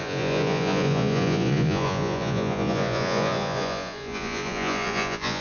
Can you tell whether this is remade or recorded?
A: remade